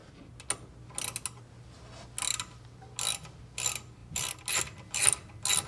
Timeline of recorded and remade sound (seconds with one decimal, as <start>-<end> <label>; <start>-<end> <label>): 0.0-5.7 recorded